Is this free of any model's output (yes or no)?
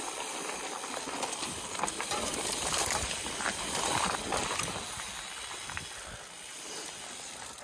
yes